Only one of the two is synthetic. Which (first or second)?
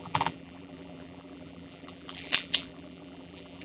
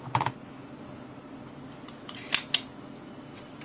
first